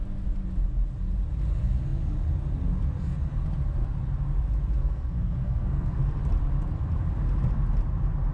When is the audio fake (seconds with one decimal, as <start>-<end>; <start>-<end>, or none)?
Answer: 4.8-6.0